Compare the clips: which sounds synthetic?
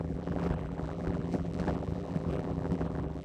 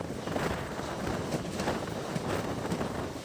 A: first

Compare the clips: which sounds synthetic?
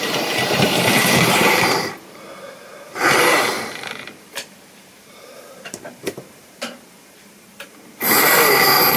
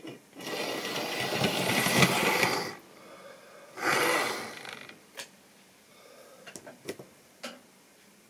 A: first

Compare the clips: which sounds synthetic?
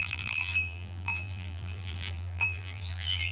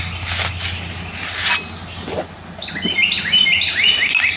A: first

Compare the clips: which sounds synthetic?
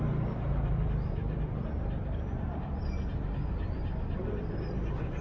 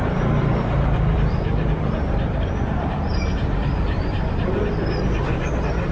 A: second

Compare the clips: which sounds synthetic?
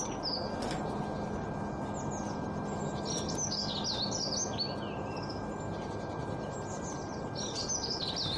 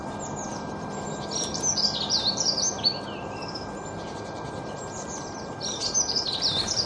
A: second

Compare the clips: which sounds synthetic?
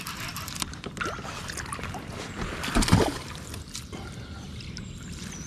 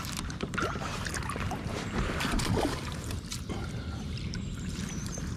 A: second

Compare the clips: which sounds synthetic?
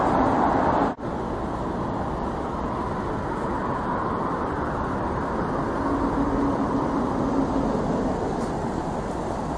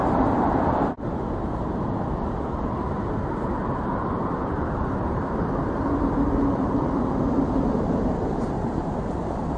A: second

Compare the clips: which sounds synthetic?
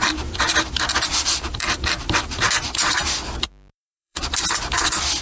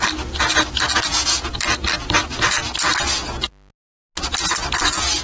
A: first